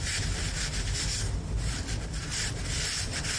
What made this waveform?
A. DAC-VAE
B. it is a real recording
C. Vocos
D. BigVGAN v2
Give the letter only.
B